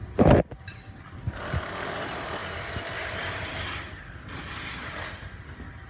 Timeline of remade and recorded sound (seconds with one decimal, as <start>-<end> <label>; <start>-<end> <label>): 0.0-5.9 recorded